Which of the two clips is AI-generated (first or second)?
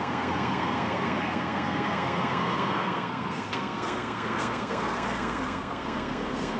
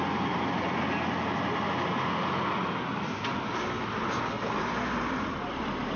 first